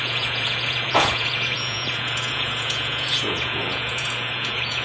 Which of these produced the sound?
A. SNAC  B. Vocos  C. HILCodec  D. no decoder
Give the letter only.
B